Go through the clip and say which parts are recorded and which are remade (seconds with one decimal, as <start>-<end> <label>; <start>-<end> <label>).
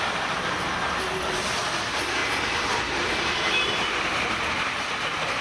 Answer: 0.0-5.4 recorded